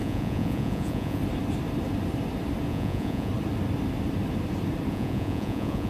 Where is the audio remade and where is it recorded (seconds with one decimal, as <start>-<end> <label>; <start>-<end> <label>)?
0.0-1.2 remade; 1.2-2.7 recorded; 2.7-3.3 remade; 3.3-4.9 recorded; 4.9-5.9 remade